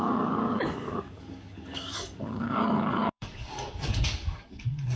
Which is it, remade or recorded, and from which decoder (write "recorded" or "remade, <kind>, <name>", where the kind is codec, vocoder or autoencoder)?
remade, codec, DAC